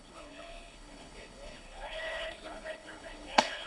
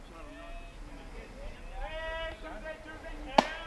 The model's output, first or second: first